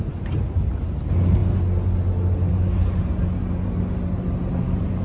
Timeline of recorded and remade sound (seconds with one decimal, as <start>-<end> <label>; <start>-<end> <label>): 0.0-1.4 remade; 1.4-4.4 recorded; 4.4-5.0 remade

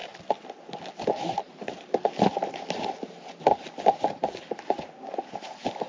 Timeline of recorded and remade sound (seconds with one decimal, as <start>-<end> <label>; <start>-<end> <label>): 0.0-5.9 recorded

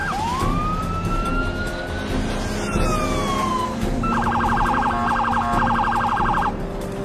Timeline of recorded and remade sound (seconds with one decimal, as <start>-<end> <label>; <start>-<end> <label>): 0.0-7.0 recorded

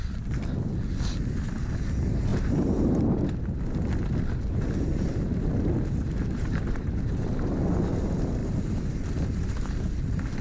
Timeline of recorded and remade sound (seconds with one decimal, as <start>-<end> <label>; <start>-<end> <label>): 0.0-2.3 recorded; 2.3-3.0 remade; 3.0-4.9 recorded; 4.9-7.5 remade; 7.5-10.4 recorded

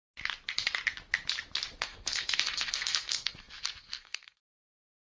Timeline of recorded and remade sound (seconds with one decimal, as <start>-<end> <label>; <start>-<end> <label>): 0.0-1.8 recorded; 1.8-5.1 remade